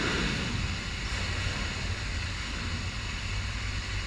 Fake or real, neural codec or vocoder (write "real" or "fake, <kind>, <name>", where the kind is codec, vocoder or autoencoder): real